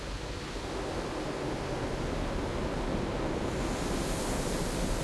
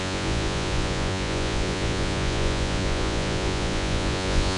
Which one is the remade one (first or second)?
second